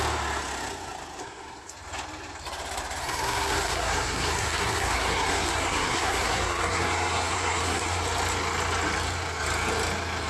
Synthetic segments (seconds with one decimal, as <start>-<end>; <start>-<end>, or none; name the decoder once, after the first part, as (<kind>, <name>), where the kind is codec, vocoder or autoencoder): 1.2-1.7 (codec, SNAC); 3.0-8.0